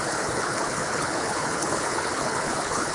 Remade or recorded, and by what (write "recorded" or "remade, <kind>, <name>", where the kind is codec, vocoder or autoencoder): remade, codec, HILCodec